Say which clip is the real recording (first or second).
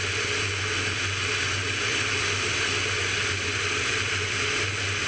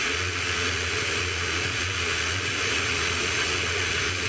first